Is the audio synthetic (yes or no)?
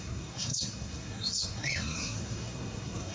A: yes